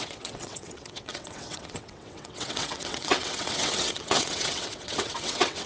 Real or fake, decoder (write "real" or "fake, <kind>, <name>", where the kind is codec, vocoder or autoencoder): fake, vocoder, WaveNeXt